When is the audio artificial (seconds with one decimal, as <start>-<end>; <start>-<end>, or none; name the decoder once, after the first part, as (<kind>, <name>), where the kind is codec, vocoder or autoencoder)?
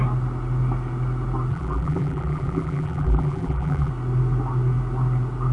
1.5-3.9 (vocoder, BigVGAN v2)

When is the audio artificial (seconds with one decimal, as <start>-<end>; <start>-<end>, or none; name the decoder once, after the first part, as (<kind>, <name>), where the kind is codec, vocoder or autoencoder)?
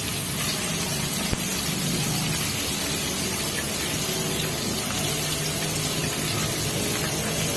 none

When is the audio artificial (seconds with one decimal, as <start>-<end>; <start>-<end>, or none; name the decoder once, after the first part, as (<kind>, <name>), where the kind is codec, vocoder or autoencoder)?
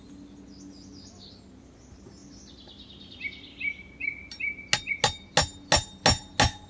none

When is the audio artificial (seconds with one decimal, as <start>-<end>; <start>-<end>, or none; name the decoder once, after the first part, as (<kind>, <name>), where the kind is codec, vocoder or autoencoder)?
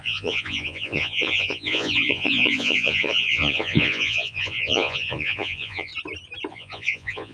0.0-5.9 (vocoder, Vocos); 6.5-7.3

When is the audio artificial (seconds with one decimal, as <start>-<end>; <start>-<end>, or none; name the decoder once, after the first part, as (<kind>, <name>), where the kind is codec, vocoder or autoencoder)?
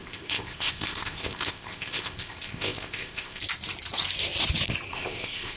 0.0-3.4 (codec, ZipCodec); 4.9-5.6